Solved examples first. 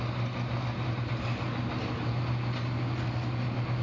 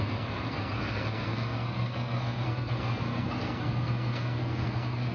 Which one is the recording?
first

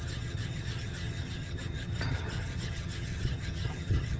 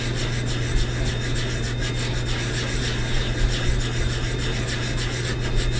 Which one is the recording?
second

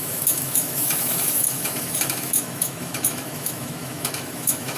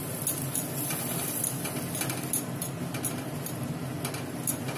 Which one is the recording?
second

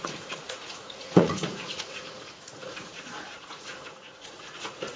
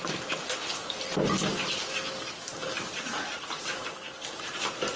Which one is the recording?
second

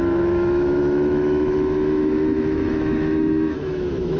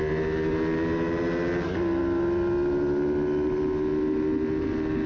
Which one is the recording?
second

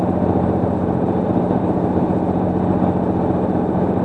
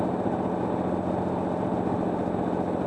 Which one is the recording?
second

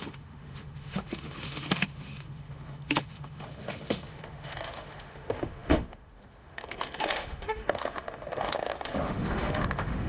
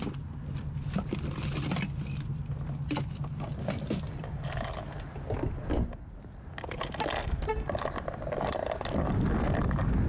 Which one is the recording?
second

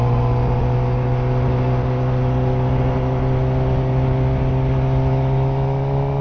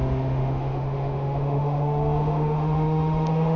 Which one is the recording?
first